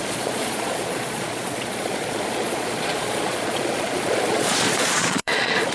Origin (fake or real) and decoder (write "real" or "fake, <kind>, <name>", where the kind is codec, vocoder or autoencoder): fake, vocoder, Vocos